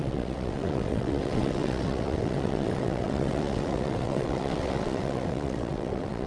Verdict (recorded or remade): remade